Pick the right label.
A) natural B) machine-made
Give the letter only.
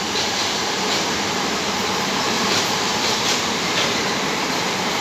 B